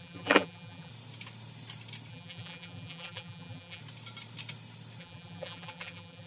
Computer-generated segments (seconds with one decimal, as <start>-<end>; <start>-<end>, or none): 0.0-0.9; 2.1-3.8; 5.0-6.3

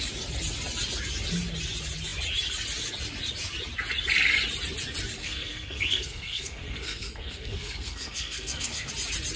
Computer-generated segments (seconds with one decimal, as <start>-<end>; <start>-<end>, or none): 5.2-8.9